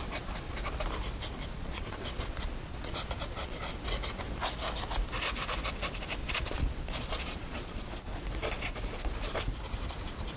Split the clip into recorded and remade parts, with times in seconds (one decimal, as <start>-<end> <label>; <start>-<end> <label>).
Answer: 0.0-1.5 recorded; 1.5-3.7 remade; 3.7-6.2 recorded; 6.2-8.2 remade; 8.2-10.4 recorded